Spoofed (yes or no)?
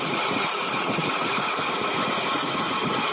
yes